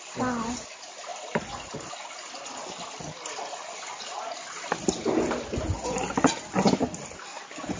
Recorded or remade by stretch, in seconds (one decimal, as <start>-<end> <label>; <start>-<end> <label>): 0.0-7.8 recorded